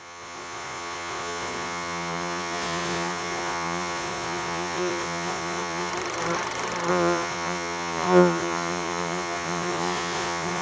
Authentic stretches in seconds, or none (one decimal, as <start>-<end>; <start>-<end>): 5.9-6.9